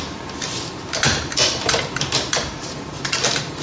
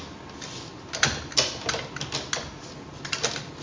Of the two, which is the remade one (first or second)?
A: first